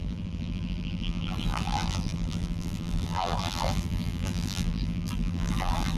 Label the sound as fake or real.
fake